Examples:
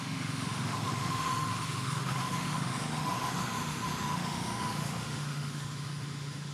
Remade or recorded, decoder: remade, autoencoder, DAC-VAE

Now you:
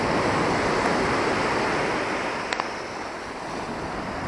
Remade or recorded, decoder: recorded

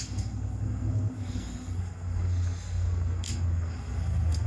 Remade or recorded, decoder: remade, codec, SNAC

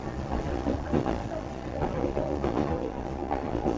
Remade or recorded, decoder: remade, vocoder, Vocos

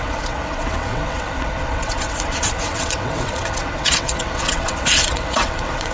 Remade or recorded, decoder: remade, vocoder, WaveNeXt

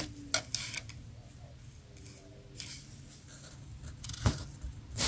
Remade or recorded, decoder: recorded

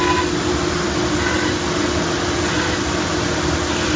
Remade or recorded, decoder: recorded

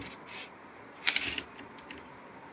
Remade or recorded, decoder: recorded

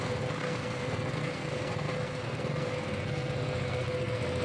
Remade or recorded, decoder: remade, codec, SNAC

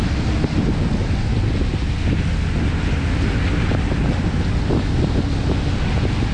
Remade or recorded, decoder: recorded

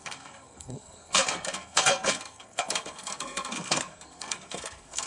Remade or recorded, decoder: remade, codec, SNAC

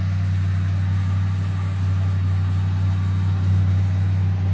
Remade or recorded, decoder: recorded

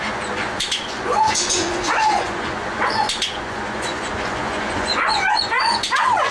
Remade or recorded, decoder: remade, vocoder, Vocos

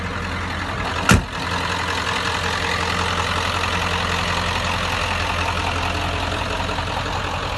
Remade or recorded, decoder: recorded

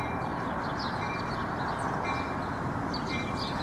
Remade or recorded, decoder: recorded